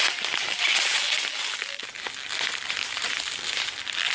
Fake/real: real